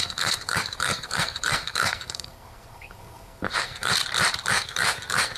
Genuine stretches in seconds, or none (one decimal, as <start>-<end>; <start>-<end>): 3.9-4.5